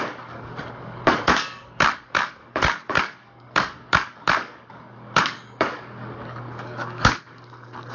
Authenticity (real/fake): fake